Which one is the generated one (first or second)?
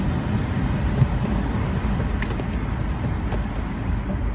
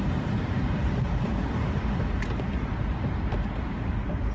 second